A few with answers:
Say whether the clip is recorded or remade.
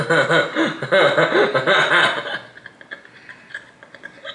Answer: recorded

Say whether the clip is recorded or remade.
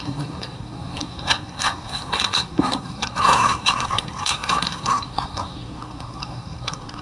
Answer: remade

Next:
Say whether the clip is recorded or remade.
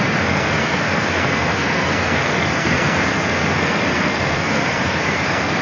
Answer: remade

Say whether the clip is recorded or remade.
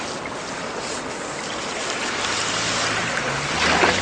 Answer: recorded